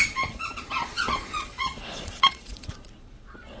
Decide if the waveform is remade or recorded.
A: remade